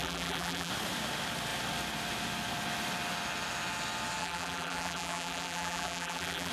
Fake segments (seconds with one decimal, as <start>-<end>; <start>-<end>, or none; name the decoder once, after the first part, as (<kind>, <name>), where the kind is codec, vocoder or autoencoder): 0.0-0.7 (vocoder, BigVGAN v2); 4.2-6.5